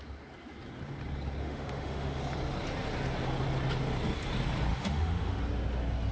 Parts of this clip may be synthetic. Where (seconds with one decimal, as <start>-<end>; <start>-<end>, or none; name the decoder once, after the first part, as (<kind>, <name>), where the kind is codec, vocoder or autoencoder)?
1.4-2.2 (autoencoder, DAC-VAE); 4.7-5.4